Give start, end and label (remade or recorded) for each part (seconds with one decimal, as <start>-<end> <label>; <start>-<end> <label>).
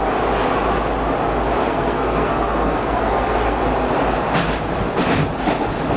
0.0-1.6 recorded; 1.6-3.6 remade; 3.6-6.0 recorded